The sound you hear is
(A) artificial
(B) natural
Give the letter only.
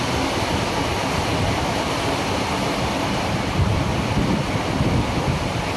B